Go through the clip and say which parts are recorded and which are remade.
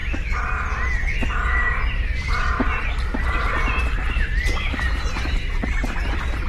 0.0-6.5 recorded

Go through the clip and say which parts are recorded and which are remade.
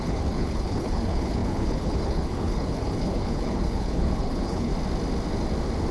0.0-4.7 remade; 4.7-5.9 recorded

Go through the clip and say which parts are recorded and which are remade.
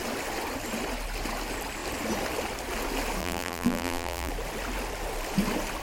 0.0-3.2 recorded; 3.2-4.3 remade; 4.3-5.8 recorded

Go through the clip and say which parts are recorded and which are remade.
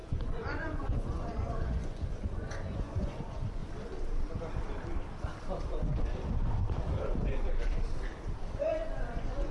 0.0-3.6 remade; 3.6-8.6 recorded; 8.6-9.5 remade